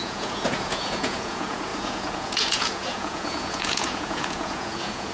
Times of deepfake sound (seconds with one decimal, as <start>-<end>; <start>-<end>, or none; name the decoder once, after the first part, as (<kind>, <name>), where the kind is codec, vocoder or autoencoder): 0.0-5.1 (vocoder, Vocos)